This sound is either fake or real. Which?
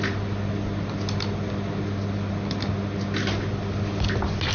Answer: real